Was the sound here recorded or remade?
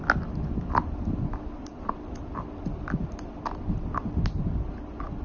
recorded